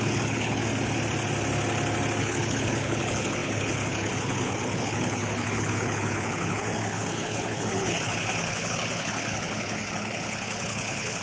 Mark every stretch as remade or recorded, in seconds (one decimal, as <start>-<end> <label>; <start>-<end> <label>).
0.0-0.6 remade; 0.6-2.2 recorded; 2.2-11.2 remade